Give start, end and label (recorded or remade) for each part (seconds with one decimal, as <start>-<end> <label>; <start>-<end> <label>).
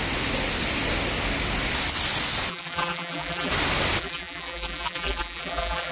0.0-2.5 recorded; 2.5-3.5 remade; 3.5-4.0 recorded; 4.0-5.9 remade